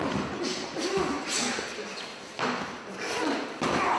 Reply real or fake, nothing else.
real